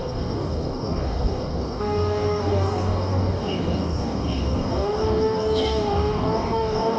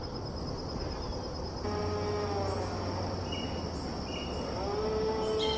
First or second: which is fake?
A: first